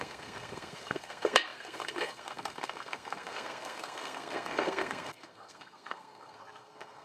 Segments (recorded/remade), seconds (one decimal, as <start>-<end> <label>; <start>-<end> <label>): 0.0-7.0 remade